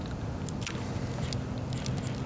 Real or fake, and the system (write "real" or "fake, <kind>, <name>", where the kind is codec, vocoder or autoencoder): real